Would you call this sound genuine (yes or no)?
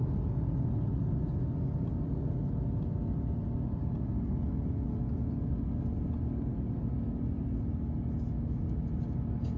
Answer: yes